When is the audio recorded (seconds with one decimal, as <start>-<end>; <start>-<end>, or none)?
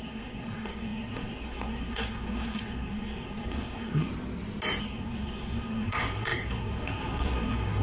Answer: 4.1-4.8